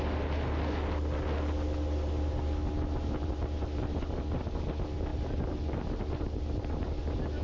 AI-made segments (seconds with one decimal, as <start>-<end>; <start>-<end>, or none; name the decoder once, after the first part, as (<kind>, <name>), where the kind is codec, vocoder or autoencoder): none